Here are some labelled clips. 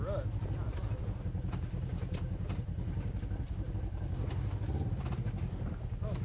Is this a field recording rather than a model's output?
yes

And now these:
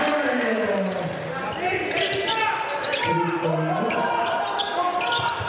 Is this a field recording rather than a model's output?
yes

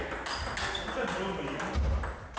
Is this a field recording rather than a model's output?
yes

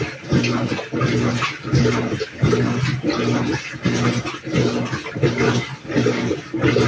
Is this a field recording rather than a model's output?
yes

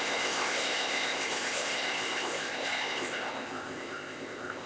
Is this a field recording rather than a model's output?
no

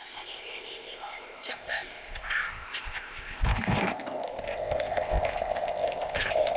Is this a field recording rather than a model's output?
no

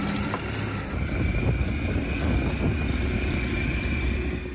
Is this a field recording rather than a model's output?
yes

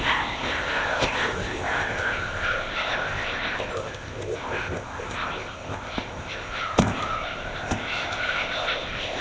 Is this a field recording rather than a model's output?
no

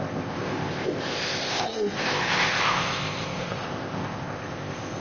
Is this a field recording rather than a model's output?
no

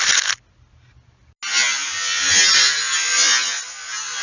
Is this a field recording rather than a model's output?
yes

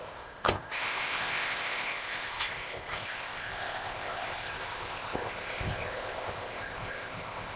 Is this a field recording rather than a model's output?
no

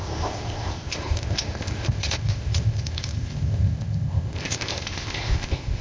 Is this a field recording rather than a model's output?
no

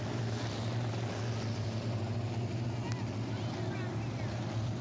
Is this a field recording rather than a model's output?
yes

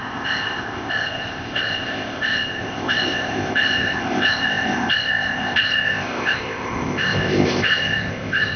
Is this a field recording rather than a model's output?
no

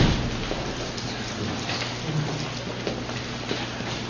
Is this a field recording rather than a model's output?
yes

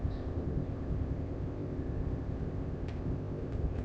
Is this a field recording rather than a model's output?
no